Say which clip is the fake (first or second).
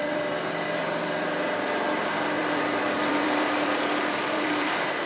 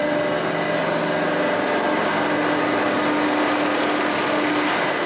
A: first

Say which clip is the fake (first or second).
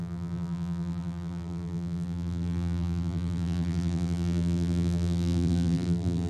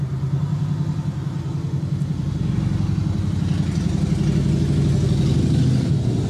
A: first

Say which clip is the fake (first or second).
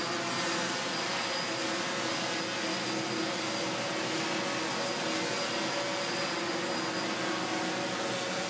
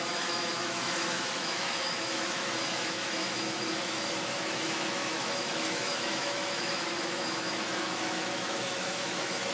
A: second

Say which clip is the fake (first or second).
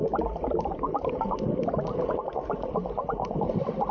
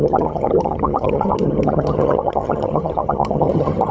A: second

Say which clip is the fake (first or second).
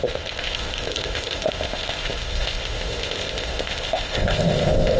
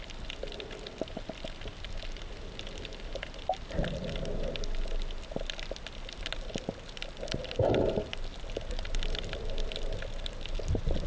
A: first